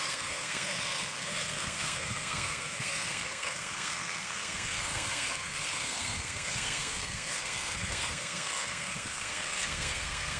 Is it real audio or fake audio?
fake